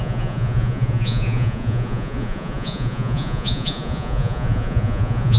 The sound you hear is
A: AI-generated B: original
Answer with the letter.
A